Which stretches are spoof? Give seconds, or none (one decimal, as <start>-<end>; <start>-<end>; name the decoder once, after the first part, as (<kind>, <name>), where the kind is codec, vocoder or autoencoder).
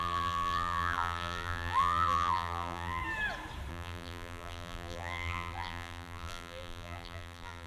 0.0-3.0 (vocoder, BigVGAN v2); 3.7-7.7